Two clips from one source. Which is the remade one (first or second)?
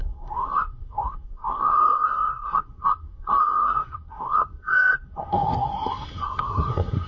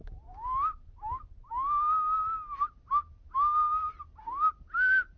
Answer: first